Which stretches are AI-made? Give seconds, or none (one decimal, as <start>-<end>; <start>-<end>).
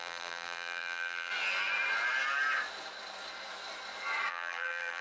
0.0-1.3; 4.3-5.0